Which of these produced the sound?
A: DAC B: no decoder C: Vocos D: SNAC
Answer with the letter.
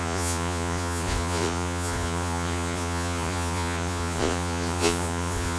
C